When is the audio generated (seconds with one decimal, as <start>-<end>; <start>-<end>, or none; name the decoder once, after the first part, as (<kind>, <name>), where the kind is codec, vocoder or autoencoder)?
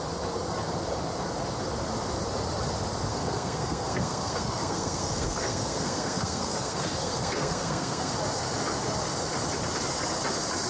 3.1-8.1 (codec, SNAC)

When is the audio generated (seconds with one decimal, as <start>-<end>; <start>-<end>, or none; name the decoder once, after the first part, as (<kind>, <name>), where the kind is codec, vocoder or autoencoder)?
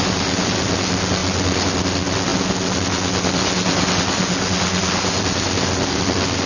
none